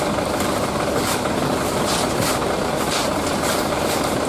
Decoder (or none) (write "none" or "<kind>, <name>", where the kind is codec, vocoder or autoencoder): vocoder, BigVGAN v2